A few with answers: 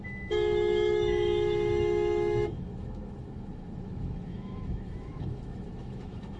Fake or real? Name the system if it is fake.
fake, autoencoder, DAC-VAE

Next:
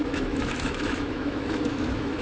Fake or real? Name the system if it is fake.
fake, autoencoder, DAC-VAE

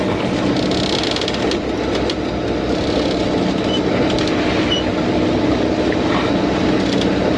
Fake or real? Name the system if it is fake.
real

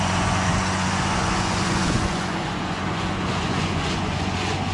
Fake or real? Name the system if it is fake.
fake, vocoder, Vocos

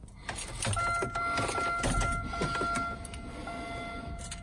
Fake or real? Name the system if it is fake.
real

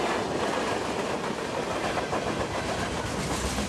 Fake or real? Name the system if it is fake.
real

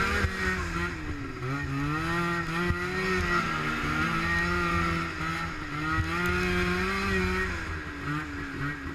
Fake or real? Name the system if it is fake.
real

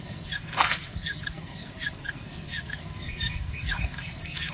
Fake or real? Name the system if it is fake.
fake, codec, SNAC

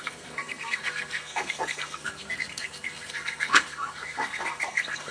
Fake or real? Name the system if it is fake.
fake, codec, SNAC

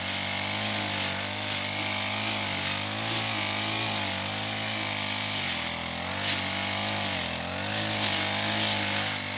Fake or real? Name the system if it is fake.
real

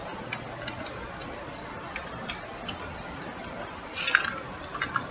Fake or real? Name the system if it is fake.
real